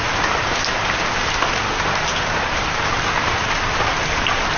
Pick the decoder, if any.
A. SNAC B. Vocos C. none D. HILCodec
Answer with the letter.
C